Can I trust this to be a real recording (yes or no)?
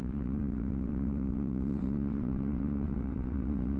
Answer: no